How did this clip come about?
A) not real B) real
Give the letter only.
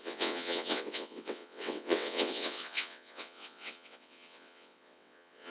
A